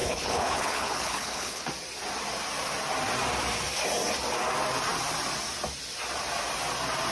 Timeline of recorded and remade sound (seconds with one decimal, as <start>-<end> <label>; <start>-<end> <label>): 0.0-1.7 remade; 1.7-7.1 recorded